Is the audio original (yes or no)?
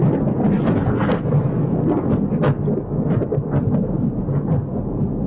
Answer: yes